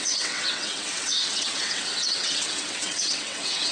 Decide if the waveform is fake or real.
fake